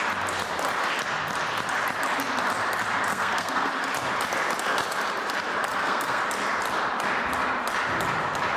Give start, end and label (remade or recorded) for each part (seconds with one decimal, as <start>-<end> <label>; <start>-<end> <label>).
0.0-3.1 recorded; 3.1-3.7 remade; 3.7-5.7 recorded; 5.7-6.2 remade; 6.2-8.6 recorded